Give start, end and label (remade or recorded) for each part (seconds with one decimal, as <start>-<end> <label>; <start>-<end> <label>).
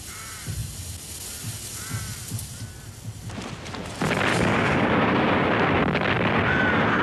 0.0-4.3 recorded; 4.3-5.1 remade; 5.1-7.0 recorded